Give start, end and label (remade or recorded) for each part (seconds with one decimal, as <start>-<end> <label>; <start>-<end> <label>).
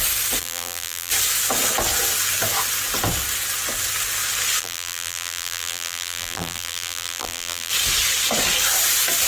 0.0-0.4 recorded; 0.4-1.1 remade; 1.1-4.6 recorded; 4.6-7.7 remade; 7.7-9.3 recorded